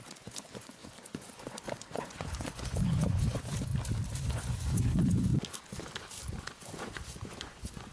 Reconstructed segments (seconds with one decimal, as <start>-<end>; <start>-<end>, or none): 0.0-3.7; 4.3-5.3; 6.4-7.9